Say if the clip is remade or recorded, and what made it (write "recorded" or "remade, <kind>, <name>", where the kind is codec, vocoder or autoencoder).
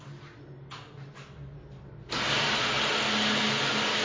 recorded